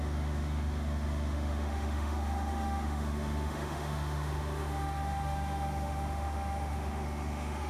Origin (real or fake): fake